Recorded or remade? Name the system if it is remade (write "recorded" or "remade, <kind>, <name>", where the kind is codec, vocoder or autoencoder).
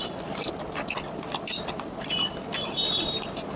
recorded